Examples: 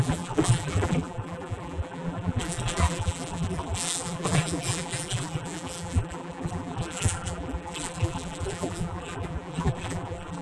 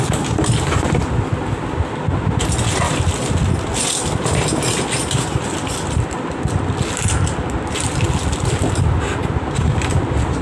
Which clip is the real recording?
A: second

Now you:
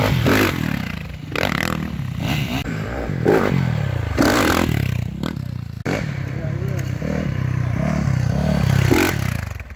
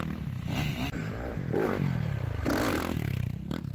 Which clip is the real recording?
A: first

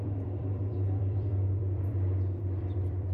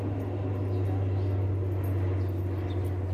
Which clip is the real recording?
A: second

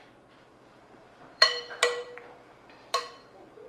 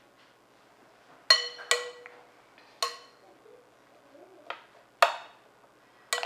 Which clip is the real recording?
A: second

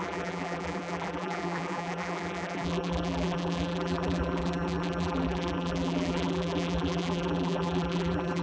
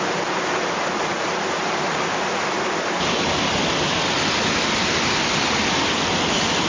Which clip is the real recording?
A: second